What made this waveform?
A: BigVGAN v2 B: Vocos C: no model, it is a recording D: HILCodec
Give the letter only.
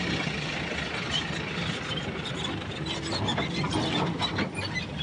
A